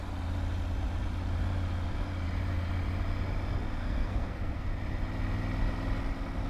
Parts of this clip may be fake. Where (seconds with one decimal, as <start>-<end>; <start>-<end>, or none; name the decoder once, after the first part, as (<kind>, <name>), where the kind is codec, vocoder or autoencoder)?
3.8-4.7 (codec, SNAC)